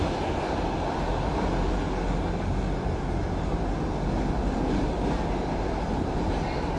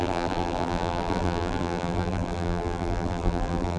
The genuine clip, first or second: first